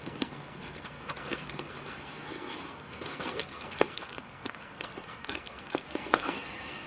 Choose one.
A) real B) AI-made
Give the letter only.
B